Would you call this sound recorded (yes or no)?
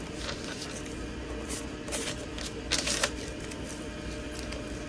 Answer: yes